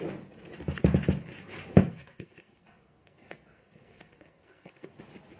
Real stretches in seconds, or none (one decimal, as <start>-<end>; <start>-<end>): 0.0-1.8; 5.0-5.4